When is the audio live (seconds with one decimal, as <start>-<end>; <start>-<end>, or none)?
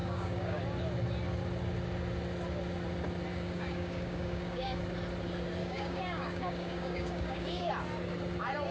0.6-3.3; 4.8-5.6; 7.7-8.7